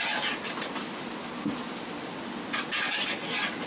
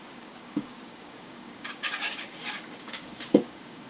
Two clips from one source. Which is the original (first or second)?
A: first